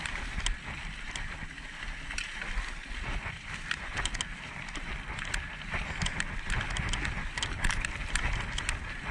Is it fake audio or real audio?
real